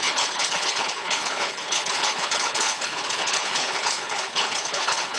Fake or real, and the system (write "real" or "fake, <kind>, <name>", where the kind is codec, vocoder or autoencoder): fake, codec, HILCodec